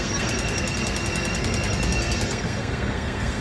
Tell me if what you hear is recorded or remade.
remade